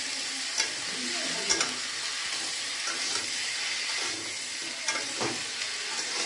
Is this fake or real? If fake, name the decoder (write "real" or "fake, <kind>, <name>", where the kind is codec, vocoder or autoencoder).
real